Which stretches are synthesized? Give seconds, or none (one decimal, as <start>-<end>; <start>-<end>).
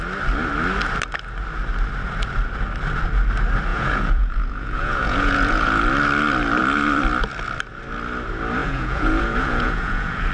3.7-5.8; 8.6-10.3